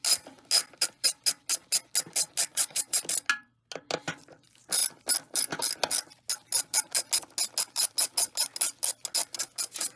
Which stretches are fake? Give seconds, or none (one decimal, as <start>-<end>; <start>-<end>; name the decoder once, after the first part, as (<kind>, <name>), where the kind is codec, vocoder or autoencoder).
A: 2.5-3.0 (vocoder, Vocos)